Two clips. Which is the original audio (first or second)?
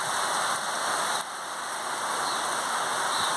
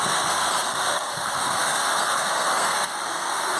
first